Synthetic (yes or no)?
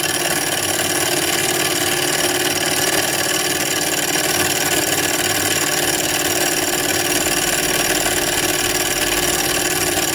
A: no